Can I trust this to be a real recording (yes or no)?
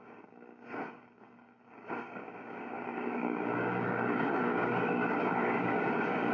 no